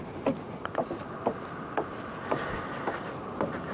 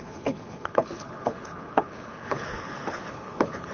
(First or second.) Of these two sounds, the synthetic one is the second